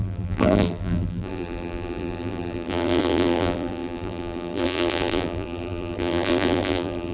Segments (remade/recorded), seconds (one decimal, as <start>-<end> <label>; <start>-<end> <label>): 0.0-7.1 remade